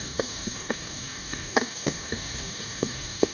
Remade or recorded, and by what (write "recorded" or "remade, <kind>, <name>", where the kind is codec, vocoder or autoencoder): remade, codec, DAC